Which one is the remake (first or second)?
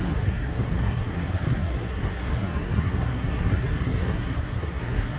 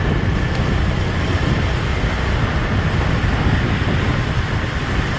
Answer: first